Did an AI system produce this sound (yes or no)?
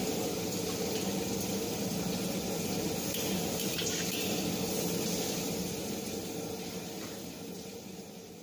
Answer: no